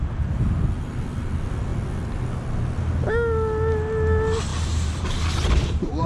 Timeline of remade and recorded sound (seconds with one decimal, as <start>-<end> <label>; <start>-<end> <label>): 0.0-4.5 recorded; 4.5-6.1 remade